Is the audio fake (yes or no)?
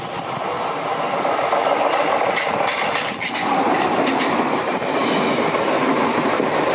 no